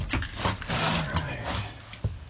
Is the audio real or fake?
real